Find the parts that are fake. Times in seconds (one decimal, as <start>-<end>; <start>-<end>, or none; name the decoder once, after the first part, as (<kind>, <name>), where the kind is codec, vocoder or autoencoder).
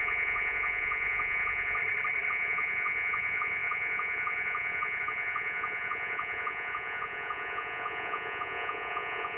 0.0-1.8 (vocoder, Vocos); 2.3-9.4